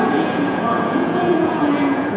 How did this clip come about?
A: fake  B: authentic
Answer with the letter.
A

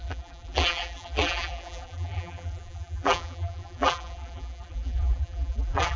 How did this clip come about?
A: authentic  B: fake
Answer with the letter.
B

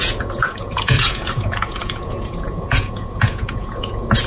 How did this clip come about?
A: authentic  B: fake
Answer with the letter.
B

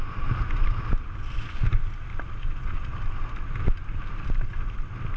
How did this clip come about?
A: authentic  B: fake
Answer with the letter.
A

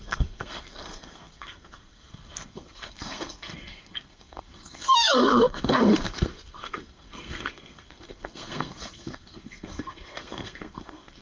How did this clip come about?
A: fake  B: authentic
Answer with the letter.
A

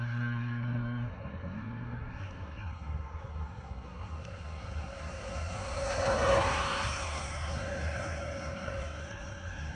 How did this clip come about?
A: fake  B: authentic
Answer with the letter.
A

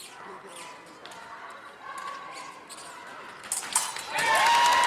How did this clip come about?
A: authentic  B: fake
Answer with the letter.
A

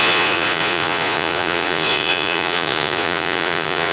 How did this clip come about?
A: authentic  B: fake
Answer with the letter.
B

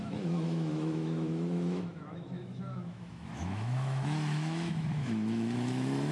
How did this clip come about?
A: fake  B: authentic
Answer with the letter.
A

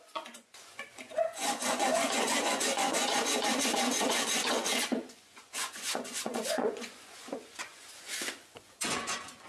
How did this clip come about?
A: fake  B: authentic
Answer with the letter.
A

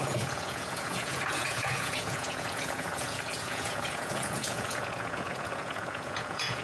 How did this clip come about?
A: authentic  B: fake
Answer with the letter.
B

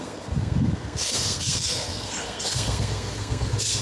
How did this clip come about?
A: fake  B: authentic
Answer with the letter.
A